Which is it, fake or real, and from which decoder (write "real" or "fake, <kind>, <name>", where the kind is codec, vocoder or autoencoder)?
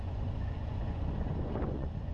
fake, vocoder, Vocos